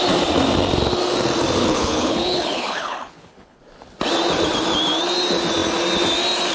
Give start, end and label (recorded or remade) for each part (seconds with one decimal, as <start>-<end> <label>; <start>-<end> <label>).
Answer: 0.0-1.6 recorded; 1.6-3.6 remade; 3.6-6.5 recorded